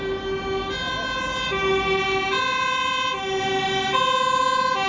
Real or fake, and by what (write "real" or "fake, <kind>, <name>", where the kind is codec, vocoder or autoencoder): real